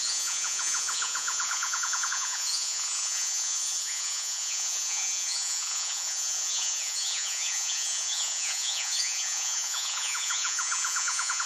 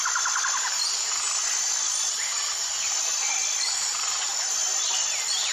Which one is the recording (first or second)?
second